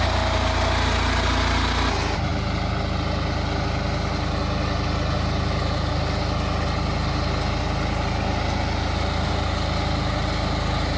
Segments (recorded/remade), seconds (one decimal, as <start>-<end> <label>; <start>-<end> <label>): 0.0-11.0 recorded